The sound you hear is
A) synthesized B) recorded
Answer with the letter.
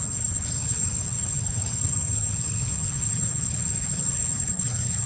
A